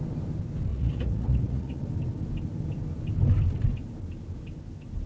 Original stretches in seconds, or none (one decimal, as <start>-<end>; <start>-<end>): 0.0-0.7; 1.8-5.1